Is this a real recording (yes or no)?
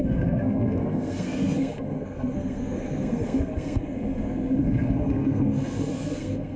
no